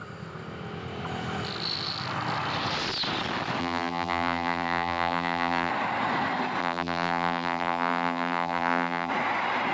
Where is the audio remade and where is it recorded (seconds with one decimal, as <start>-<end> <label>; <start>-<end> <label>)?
0.0-3.6 recorded; 3.6-5.7 remade; 5.7-6.6 recorded; 6.6-9.1 remade; 9.1-9.7 recorded